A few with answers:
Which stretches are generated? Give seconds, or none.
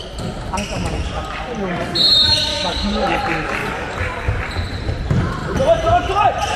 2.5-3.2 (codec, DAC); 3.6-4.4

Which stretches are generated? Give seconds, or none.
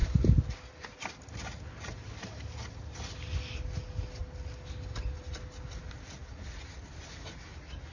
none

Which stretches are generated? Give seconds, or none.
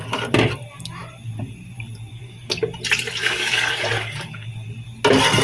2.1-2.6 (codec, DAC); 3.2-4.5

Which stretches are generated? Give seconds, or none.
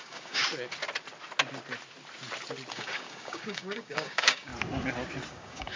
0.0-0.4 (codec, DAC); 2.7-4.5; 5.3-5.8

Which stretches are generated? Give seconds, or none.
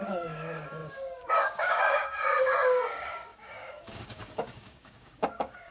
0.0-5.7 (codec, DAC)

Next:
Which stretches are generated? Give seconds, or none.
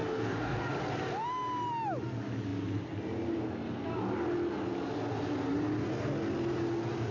0.0-0.6 (codec, DAC)